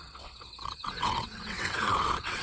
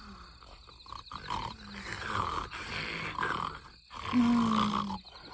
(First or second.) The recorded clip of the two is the second